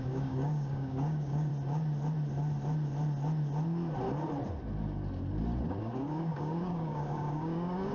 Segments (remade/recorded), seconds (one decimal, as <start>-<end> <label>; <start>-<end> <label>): 0.0-1.5 remade; 1.5-5.8 recorded; 5.8-7.9 remade